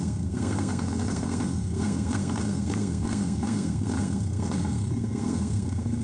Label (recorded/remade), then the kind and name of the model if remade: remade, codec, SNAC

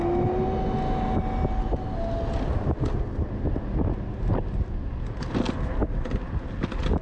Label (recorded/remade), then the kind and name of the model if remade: recorded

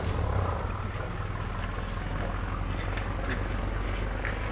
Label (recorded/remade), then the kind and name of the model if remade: recorded